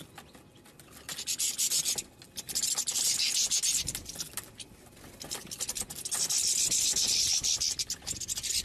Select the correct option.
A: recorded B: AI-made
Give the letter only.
A